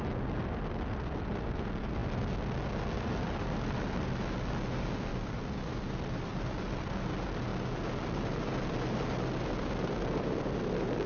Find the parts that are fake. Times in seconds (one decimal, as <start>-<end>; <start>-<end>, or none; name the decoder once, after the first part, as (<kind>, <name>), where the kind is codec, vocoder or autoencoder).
5.1-7.1 (vocoder, BigVGAN v2)